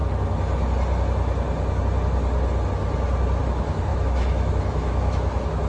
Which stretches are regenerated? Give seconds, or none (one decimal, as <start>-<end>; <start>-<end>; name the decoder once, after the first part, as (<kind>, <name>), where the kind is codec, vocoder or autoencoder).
3.4-5.7 (autoencoder, DAC-VAE)